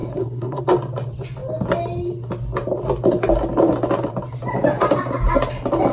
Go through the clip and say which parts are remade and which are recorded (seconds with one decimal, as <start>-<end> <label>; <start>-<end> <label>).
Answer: 0.0-0.6 remade; 0.6-5.9 recorded